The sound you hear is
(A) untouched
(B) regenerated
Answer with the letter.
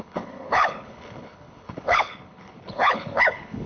B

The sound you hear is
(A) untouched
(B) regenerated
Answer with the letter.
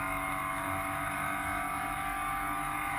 B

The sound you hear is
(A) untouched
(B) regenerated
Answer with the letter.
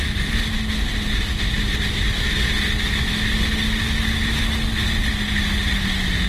A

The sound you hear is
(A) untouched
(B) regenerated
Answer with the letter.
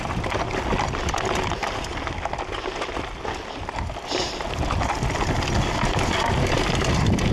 A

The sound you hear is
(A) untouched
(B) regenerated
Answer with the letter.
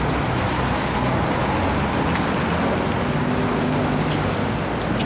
A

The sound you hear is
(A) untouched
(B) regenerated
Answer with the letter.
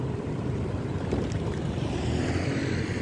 A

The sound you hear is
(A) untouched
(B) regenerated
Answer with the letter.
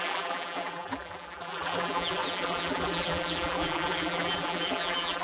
B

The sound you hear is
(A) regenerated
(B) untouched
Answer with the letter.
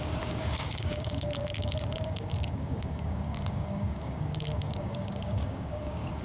A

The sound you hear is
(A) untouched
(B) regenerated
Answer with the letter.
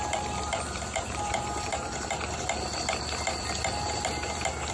B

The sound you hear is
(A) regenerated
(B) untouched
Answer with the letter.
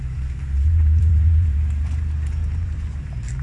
A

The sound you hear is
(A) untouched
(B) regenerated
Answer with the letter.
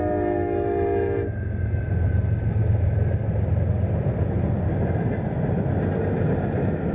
A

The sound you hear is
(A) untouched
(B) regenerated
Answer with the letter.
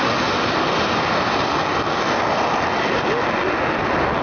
A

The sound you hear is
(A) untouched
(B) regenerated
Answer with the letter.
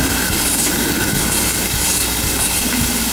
B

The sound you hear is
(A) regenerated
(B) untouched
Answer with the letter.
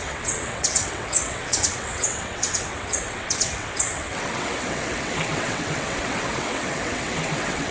A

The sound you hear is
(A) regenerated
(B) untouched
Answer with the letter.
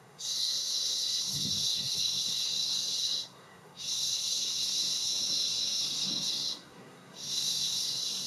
A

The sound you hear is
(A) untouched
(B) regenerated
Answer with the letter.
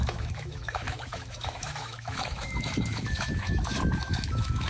B